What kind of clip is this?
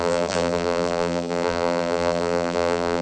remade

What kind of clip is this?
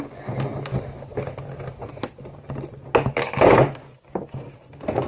recorded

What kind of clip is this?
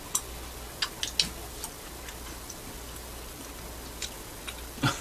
recorded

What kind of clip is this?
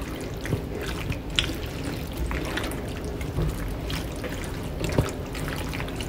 recorded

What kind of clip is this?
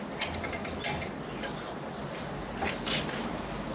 recorded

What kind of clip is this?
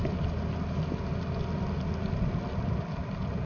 recorded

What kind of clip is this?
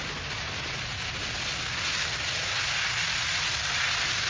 recorded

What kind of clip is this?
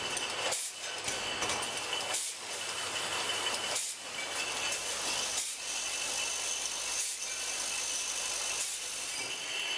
recorded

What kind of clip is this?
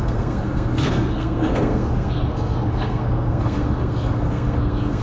remade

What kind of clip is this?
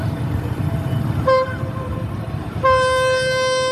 remade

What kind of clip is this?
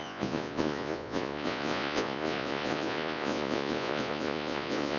remade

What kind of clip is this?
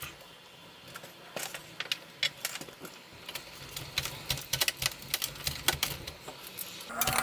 recorded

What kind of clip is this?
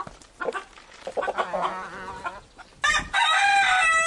recorded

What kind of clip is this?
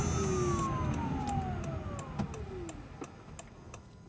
recorded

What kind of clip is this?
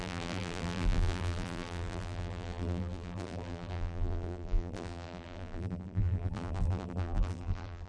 remade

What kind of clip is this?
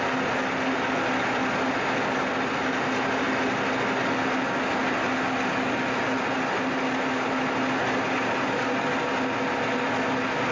recorded